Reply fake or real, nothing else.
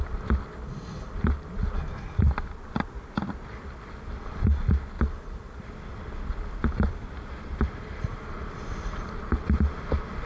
real